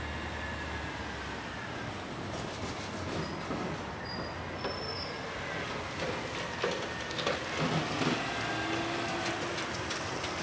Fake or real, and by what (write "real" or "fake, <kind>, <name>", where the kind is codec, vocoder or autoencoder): real